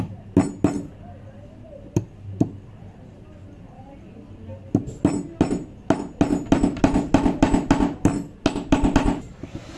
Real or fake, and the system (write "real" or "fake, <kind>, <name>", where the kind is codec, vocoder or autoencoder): real